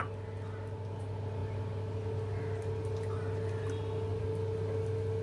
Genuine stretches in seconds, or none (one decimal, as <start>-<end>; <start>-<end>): 0.0-5.2